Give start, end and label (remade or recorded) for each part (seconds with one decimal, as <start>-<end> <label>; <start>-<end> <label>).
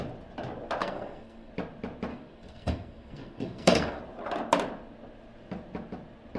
0.0-0.8 recorded; 0.8-1.5 remade; 1.5-2.1 recorded; 2.1-4.0 remade; 4.0-6.4 recorded